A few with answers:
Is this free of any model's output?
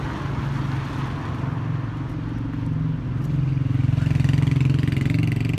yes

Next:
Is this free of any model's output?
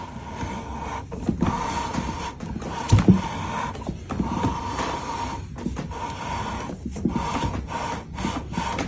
yes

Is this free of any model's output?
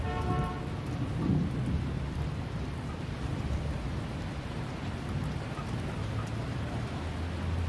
yes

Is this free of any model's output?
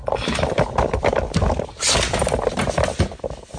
yes